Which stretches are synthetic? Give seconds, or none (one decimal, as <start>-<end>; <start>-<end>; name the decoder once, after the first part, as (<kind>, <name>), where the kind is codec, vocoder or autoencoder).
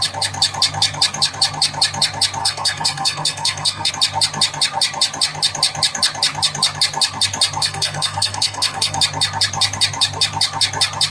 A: 2.4-3.9 (codec, SNAC); 7.6-9.0